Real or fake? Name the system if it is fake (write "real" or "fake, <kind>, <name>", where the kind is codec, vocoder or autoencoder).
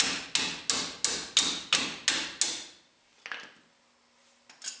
real